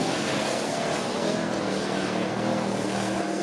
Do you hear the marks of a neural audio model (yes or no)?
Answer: yes